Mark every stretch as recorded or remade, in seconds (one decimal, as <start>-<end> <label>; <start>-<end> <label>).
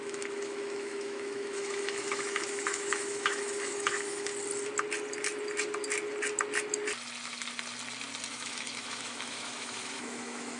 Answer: 0.0-4.3 remade; 4.3-8.3 recorded; 8.3-10.6 remade